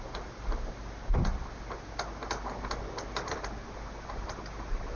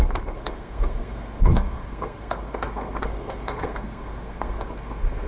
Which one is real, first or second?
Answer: first